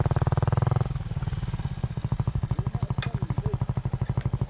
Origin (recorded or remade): recorded